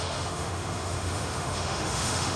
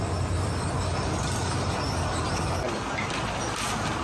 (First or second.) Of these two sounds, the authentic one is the second